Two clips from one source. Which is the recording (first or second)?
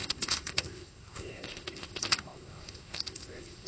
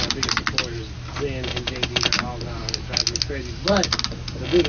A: second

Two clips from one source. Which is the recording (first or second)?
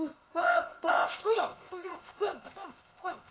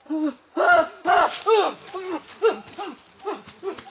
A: second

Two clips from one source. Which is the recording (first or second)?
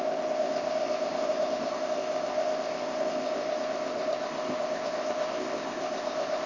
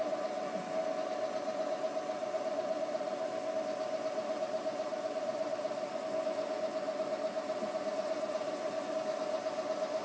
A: second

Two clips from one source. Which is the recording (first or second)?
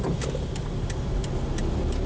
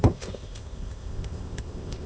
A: first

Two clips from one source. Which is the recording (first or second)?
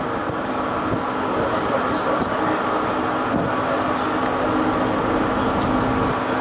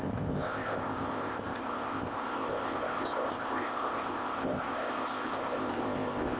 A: first